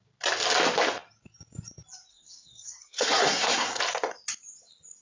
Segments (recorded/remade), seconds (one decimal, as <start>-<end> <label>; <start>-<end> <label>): 0.0-2.1 recorded; 2.1-3.8 remade; 3.8-5.0 recorded